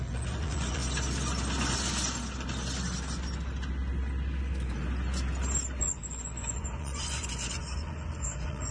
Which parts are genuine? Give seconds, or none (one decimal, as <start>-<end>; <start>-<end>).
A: 0.8-5.8